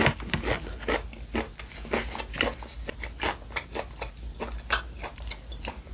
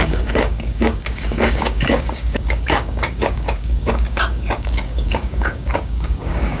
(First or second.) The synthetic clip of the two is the second